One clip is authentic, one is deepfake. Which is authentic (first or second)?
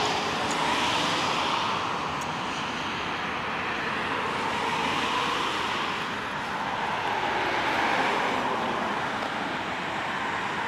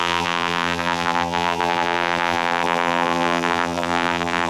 first